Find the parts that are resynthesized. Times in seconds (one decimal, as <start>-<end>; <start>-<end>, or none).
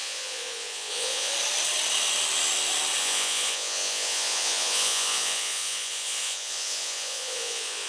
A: 0.0-1.3; 3.0-7.9